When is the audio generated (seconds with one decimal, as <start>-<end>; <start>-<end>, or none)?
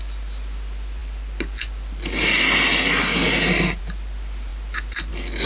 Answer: none